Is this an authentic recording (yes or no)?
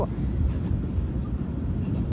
yes